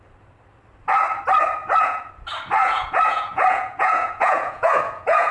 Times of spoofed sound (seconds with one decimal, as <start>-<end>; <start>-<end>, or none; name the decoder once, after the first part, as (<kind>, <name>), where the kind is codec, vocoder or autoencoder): 1.6-2.1 (vocoder, Vocos); 2.6-5.3